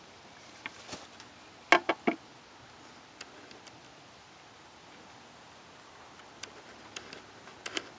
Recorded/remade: recorded